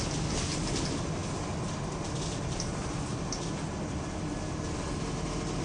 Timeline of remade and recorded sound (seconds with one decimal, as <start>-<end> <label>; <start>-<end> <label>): 0.0-5.6 recorded